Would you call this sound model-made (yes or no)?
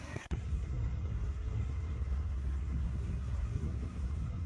yes